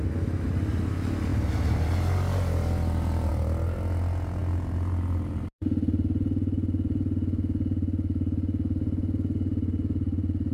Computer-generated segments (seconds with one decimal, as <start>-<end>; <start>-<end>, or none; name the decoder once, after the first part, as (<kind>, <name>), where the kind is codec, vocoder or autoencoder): none